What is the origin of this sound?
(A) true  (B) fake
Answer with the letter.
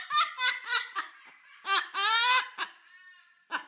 A